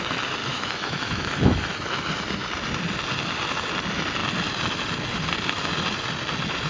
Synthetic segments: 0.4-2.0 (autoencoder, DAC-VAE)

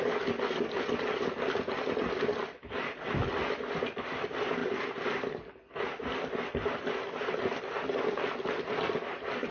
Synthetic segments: none

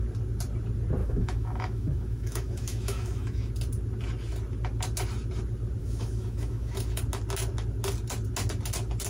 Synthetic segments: 1.0-3.5 (autoencoder, DAC-VAE); 5.8-7.0

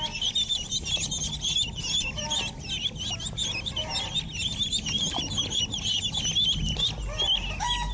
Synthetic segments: none

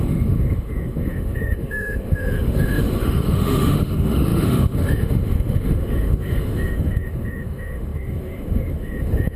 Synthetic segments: 0.0-9.4 (autoencoder, DAC-VAE)